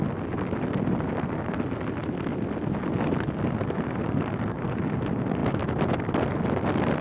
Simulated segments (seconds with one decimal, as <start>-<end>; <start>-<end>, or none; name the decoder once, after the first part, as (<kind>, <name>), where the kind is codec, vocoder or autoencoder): none